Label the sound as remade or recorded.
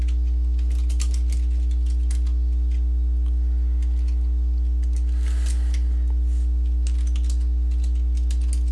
recorded